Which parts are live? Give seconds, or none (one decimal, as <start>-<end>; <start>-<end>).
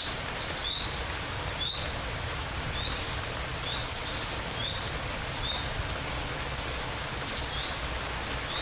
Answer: 0.0-8.6